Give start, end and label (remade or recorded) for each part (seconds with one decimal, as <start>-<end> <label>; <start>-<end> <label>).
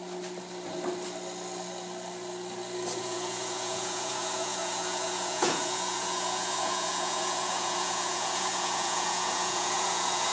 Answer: 0.0-3.0 recorded; 3.0-10.3 remade